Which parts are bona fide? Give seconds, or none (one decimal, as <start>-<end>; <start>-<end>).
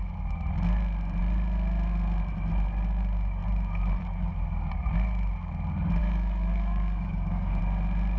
0.0-6.0; 7.6-8.2